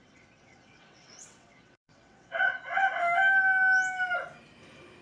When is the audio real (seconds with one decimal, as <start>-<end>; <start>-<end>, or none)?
3.0-5.0